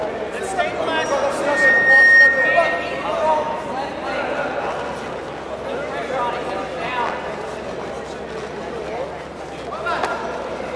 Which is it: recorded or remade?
recorded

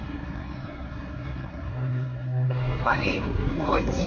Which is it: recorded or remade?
remade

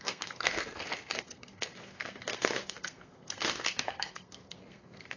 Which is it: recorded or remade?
remade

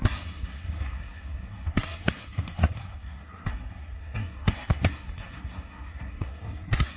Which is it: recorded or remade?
remade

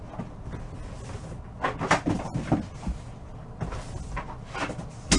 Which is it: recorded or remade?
recorded